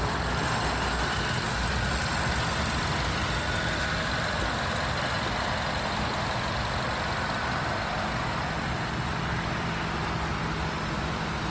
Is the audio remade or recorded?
recorded